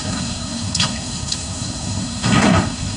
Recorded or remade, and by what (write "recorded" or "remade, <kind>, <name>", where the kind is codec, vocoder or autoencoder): remade, codec, SNAC